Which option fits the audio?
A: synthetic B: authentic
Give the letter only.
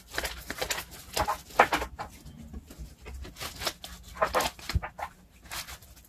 B